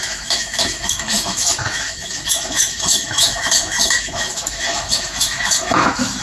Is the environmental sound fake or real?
fake